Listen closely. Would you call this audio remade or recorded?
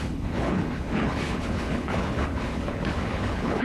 remade